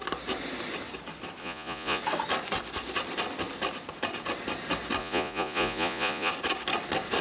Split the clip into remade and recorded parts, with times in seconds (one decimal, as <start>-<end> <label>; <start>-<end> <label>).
0.0-1.4 recorded; 1.4-2.0 remade; 2.0-5.0 recorded; 5.0-6.3 remade; 6.3-7.2 recorded